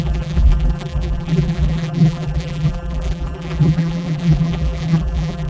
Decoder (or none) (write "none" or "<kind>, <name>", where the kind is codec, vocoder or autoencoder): vocoder, BigVGAN v2